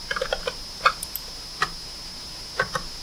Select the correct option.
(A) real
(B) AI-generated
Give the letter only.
A